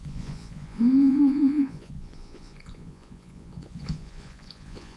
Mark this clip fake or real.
fake